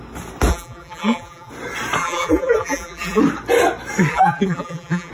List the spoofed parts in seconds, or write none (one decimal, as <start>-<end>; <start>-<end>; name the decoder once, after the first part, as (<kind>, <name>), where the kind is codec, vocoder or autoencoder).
0.5-1.5 (vocoder, BigVGAN v2); 2.0-3.2; 4.1-5.1